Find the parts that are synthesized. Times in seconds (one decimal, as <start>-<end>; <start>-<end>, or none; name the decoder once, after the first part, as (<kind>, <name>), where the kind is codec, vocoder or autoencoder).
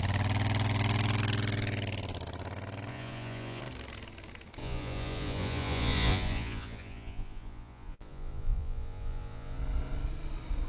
2.9-3.6 (vocoder, Vocos); 4.6-9.6